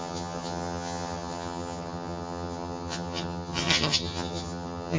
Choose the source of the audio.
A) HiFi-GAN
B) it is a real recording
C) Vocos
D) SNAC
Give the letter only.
A